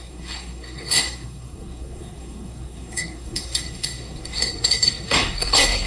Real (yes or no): no